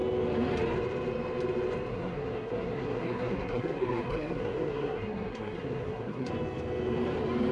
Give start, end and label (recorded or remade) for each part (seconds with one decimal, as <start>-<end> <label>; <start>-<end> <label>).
0.0-1.9 recorded; 1.9-6.3 remade; 6.3-7.5 recorded